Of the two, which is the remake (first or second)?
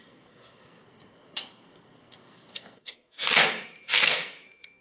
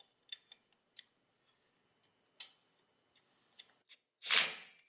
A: first